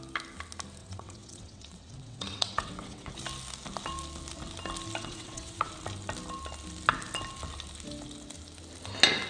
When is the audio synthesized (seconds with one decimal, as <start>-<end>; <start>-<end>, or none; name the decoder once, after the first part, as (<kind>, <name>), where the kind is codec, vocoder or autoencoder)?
0.8-3.1 (vocoder, WaveNeXt); 5.0-5.7